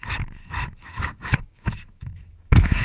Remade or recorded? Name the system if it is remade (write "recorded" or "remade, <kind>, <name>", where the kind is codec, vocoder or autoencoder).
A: remade, autoencoder, DAC-VAE